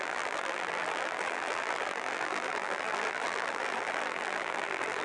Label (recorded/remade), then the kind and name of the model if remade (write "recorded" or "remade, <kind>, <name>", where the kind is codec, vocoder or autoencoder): remade, vocoder, BigVGAN v2